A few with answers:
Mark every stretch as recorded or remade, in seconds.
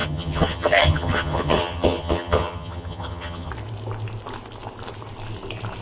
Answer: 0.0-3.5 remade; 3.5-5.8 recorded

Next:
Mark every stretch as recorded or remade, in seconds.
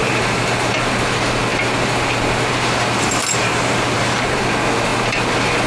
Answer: 0.0-0.7 remade; 0.7-1.5 recorded; 1.5-4.4 remade; 4.4-5.7 recorded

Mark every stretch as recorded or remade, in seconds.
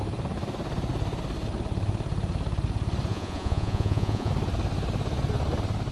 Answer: 0.0-3.1 recorded; 3.1-4.3 remade; 4.3-5.9 recorded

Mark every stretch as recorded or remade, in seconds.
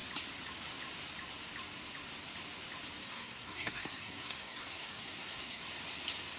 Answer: 0.0-3.0 recorded; 3.0-5.6 remade; 5.6-6.4 recorded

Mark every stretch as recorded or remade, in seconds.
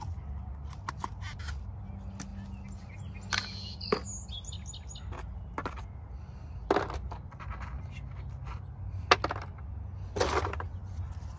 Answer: 0.0-11.4 recorded